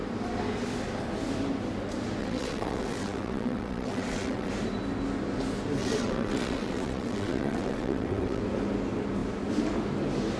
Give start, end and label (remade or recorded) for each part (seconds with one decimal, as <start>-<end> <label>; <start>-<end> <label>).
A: 0.0-2.2 recorded; 2.2-4.5 remade; 4.5-5.8 recorded; 5.8-8.4 remade; 8.4-10.4 recorded